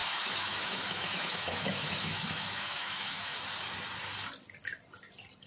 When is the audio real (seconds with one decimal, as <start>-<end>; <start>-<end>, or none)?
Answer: 3.3-5.5